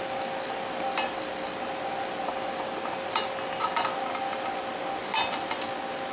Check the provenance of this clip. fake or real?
real